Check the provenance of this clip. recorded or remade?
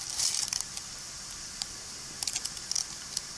recorded